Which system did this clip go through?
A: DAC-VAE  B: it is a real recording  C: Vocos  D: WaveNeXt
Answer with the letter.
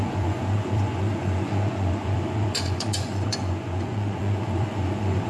C